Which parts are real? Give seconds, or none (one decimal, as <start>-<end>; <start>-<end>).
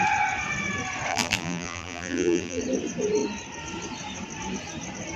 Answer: 0.0-1.1; 2.6-5.2